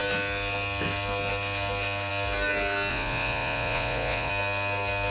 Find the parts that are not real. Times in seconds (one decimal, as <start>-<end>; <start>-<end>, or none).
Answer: 2.9-4.3